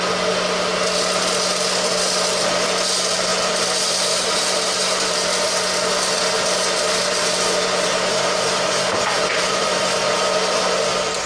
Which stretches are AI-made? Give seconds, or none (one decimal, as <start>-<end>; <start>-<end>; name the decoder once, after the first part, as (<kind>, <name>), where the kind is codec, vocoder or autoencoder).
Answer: 9.4-10.0 (vocoder, BigVGAN v2)